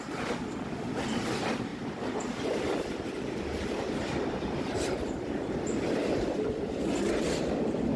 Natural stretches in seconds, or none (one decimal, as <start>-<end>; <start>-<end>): 0.0-1.7; 6.5-8.0